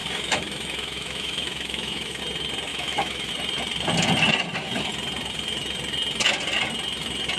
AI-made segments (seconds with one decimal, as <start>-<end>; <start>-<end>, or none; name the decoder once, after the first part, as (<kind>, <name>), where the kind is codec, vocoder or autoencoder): 0.0-2.2 (autoencoder, DAC-VAE); 2.7-3.3